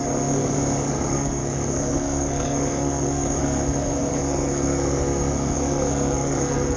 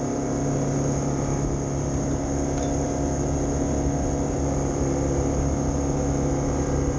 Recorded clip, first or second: second